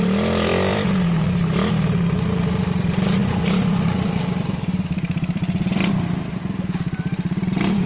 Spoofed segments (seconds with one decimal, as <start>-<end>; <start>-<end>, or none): 0.5-1.3; 3.2-7.9